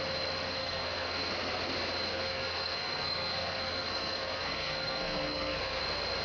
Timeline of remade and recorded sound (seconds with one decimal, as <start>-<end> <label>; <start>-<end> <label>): 0.0-0.6 recorded; 0.6-1.3 remade; 1.3-2.1 recorded; 2.1-5.8 remade; 5.8-6.2 recorded